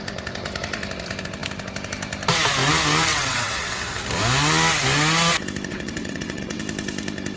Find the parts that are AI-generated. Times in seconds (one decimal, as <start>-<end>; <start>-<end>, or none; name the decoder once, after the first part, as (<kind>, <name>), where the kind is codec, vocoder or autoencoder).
3.1-3.8 (vocoder, WaveNeXt); 5.7-6.6